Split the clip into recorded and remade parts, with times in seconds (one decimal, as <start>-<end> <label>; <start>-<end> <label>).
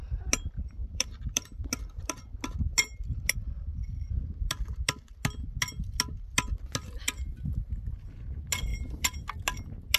0.0-0.8 recorded; 0.8-1.7 remade; 1.7-8.7 recorded; 8.7-9.2 remade; 9.2-10.0 recorded